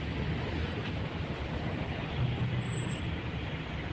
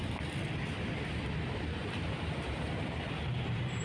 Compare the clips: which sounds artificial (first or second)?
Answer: second